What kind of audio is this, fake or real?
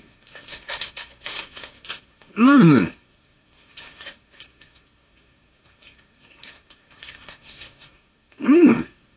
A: fake